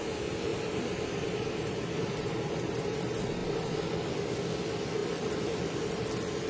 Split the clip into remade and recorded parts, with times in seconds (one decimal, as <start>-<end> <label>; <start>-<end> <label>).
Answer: 0.0-0.5 recorded; 0.5-2.3 remade; 2.3-3.4 recorded; 3.4-3.9 remade; 3.9-5.0 recorded; 5.0-5.8 remade; 5.8-6.5 recorded